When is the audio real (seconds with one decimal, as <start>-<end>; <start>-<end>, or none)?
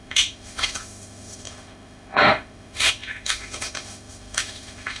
none